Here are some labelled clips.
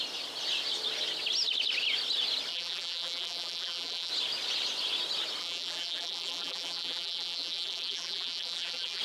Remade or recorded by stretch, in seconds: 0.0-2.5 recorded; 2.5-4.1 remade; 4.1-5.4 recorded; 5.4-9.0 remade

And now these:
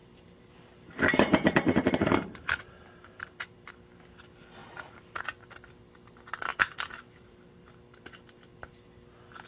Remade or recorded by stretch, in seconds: 0.0-3.7 remade; 3.7-4.6 recorded; 4.6-5.2 remade; 5.2-6.5 recorded; 6.5-7.4 remade; 7.4-9.5 recorded